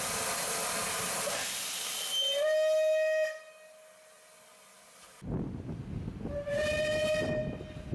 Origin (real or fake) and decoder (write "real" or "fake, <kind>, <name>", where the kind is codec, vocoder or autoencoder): real